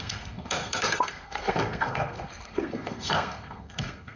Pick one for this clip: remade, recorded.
remade